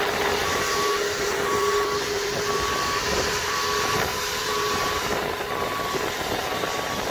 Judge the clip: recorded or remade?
remade